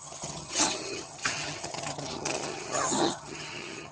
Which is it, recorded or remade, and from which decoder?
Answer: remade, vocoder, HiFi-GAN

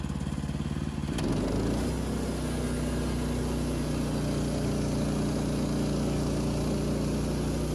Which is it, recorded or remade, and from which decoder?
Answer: recorded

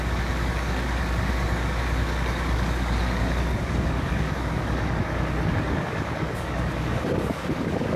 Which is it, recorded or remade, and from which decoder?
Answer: remade, codec, DAC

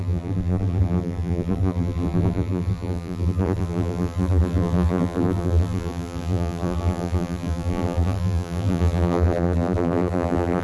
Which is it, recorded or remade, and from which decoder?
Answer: remade, vocoder, BigVGAN v2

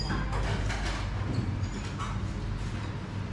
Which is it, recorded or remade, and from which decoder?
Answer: recorded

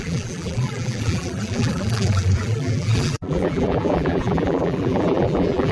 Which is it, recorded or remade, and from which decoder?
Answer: remade, vocoder, BigVGAN v2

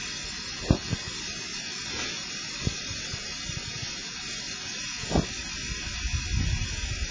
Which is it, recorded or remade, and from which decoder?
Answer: recorded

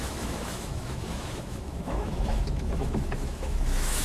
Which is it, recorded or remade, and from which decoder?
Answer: remade, autoencoder, DAC-VAE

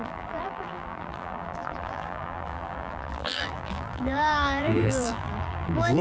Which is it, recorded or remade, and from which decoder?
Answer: remade, vocoder, BigVGAN v2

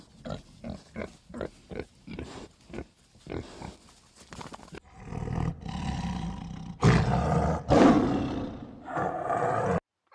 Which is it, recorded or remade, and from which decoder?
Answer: recorded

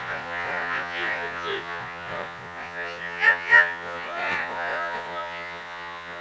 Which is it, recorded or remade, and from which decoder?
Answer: remade, vocoder, Vocos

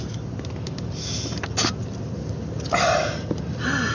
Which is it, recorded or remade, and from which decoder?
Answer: recorded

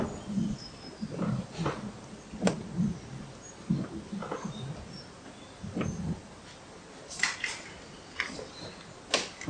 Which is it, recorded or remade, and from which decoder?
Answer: recorded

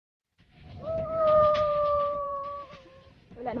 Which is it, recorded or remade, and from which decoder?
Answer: remade, vocoder, BigVGAN v2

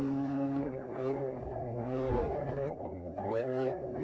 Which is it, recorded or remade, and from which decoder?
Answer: remade, codec, SNAC